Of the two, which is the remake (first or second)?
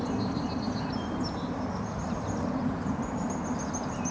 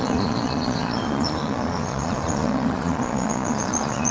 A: second